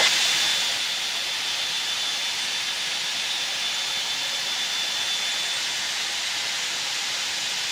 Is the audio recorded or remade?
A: recorded